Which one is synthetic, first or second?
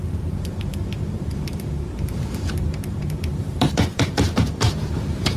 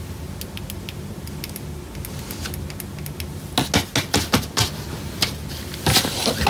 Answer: first